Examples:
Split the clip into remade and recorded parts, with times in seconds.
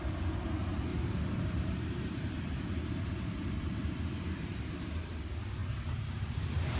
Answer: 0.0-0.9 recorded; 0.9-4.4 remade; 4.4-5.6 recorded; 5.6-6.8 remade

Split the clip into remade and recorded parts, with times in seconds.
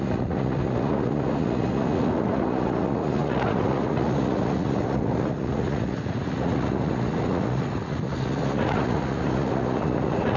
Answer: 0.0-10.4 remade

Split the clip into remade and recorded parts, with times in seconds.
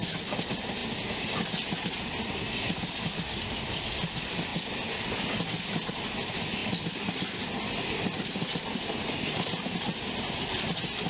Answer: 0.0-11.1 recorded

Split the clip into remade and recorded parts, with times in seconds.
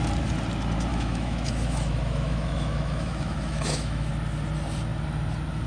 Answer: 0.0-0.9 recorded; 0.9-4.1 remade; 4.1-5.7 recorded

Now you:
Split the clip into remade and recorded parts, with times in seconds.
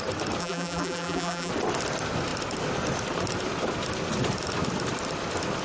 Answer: 0.0-0.4 recorded; 0.4-1.5 remade; 1.5-5.6 recorded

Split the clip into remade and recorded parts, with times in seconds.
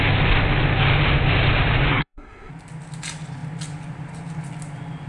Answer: 0.0-1.9 recorded; 1.9-2.5 remade; 2.5-5.1 recorded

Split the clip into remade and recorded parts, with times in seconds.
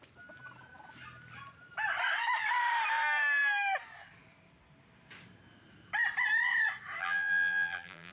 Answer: 0.0-7.0 recorded; 7.0-8.1 remade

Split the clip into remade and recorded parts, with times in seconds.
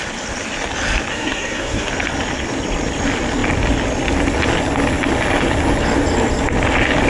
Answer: 0.0-1.1 recorded; 1.1-1.9 remade; 1.9-7.1 recorded